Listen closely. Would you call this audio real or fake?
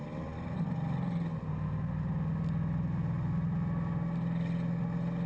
real